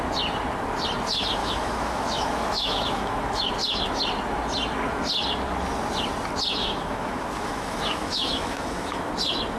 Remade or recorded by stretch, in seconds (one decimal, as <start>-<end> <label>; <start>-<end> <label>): 0.0-1.4 recorded; 1.4-3.5 remade; 3.5-6.6 recorded; 6.6-9.1 remade; 9.1-9.6 recorded

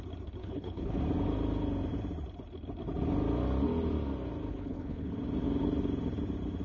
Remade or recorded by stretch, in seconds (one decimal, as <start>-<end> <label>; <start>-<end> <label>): 0.0-0.4 recorded; 0.4-1.0 remade; 1.0-4.5 recorded; 4.5-5.1 remade; 5.1-6.6 recorded

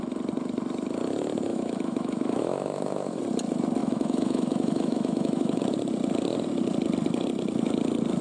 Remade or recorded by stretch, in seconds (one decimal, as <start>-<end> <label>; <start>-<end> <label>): 0.0-1.5 recorded; 1.5-3.2 remade; 3.2-3.8 recorded; 3.8-5.6 remade; 5.6-8.2 recorded

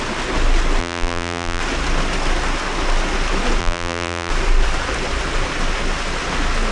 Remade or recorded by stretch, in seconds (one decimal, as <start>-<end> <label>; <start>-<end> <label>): 0.0-0.8 recorded; 0.8-1.6 remade; 1.6-3.6 recorded; 3.6-4.3 remade; 4.3-6.7 recorded